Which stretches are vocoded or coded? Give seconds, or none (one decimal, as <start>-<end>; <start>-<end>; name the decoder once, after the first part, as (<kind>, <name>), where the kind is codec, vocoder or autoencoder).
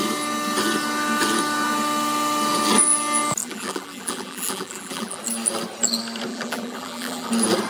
3.4-5.2 (vocoder, BigVGAN v2); 6.3-7.3